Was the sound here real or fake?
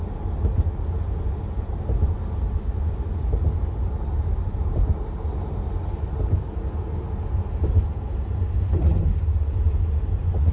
real